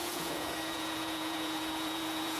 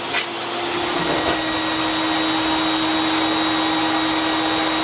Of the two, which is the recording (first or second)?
second